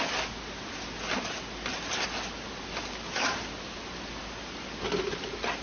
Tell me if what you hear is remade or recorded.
recorded